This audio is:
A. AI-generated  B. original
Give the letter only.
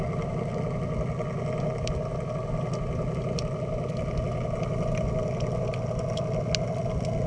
B